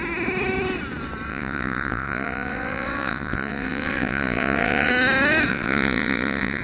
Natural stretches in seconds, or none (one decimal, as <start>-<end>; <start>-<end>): 0.0-1.3; 4.9-5.5